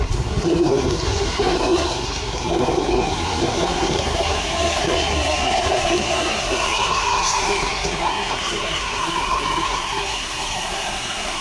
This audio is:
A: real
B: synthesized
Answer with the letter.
B